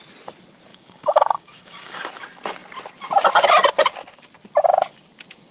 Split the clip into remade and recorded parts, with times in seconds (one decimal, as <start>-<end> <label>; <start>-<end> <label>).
0.0-0.7 recorded; 0.7-2.1 remade; 2.1-5.5 recorded